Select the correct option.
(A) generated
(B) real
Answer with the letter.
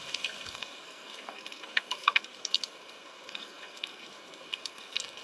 A